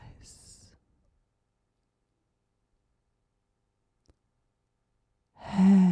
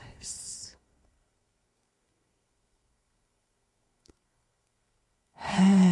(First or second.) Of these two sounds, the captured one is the first